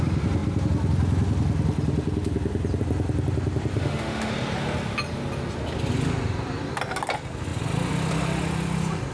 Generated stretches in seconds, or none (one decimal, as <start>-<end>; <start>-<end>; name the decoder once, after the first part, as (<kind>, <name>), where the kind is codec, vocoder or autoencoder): 3.7-4.3 (autoencoder, DAC-VAE)